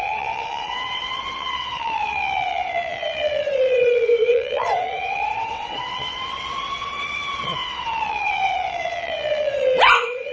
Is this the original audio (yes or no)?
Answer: no